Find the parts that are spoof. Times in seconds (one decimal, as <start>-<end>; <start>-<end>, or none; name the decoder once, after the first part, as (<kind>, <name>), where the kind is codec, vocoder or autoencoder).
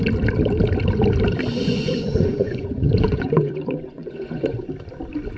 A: 1.5-4.7 (vocoder, Vocos)